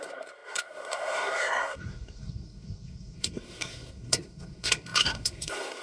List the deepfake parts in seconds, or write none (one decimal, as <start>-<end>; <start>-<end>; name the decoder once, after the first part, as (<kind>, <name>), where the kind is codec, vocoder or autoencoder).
0.0-5.8 (codec, SNAC)